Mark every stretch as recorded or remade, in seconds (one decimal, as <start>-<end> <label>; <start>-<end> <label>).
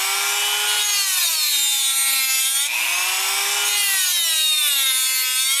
0.0-5.6 recorded